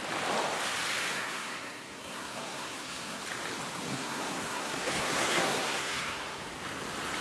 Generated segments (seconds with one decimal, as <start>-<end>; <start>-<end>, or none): 1.1-3.2; 3.9-6.5